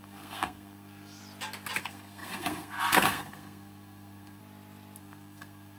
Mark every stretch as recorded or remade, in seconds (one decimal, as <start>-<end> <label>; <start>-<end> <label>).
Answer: 0.0-1.2 remade; 1.2-1.8 recorded; 1.8-4.4 remade; 4.4-5.0 recorded; 5.0-5.8 remade